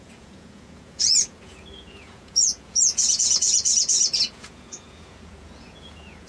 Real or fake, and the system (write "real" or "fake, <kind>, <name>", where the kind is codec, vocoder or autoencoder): fake, vocoder, Vocos